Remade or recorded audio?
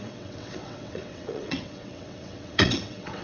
remade